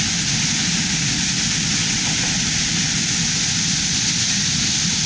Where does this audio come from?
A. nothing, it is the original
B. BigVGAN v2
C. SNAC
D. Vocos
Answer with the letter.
A